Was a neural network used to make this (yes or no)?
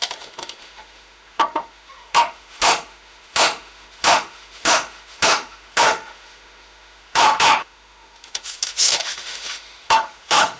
yes